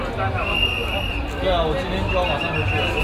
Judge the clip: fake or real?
real